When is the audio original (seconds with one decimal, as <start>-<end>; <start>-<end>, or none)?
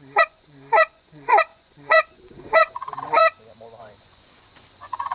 3.2-3.8